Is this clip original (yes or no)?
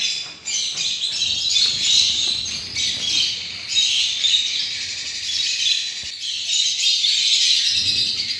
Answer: yes